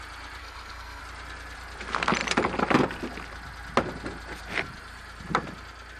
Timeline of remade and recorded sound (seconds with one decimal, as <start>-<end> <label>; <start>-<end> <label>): 0.0-0.4 recorded; 0.4-1.0 remade; 1.0-6.0 recorded